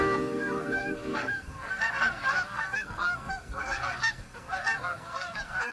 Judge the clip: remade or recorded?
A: remade